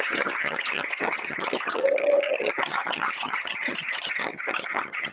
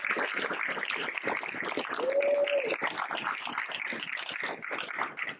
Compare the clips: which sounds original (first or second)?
second